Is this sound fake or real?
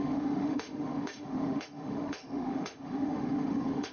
fake